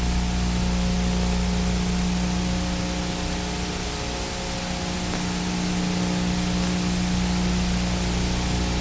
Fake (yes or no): no